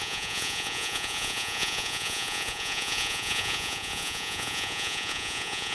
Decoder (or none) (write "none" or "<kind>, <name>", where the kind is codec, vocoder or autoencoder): vocoder, Vocos